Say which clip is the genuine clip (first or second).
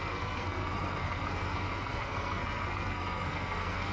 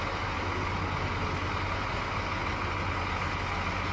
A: second